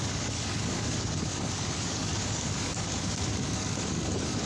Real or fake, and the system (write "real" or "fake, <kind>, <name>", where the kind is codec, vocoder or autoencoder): fake, codec, DAC